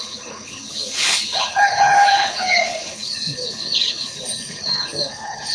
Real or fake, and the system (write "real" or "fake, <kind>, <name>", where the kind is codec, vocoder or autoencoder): fake, codec, HILCodec